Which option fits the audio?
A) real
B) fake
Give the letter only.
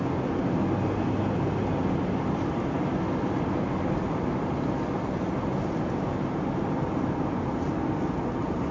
A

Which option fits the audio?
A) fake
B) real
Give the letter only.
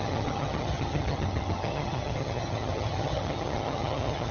A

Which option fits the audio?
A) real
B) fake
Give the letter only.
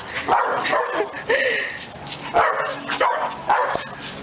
A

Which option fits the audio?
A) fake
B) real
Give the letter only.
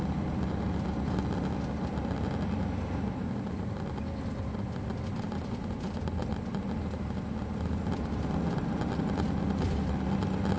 B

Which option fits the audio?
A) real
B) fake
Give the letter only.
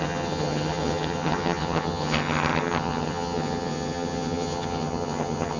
B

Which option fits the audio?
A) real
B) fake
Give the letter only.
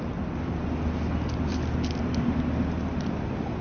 A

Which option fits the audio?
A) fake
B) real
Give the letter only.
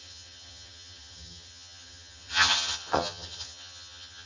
A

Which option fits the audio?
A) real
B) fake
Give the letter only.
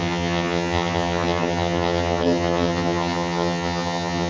B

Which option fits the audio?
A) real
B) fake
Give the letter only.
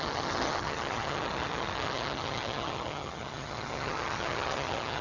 B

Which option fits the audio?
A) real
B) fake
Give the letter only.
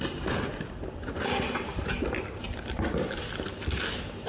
A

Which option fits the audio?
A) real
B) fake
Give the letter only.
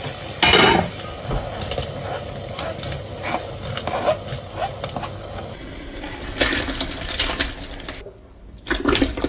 A